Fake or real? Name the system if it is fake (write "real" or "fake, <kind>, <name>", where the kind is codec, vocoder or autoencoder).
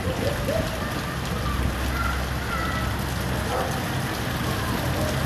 real